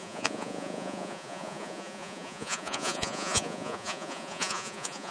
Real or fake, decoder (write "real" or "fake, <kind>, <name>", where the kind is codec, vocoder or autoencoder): fake, vocoder, Vocos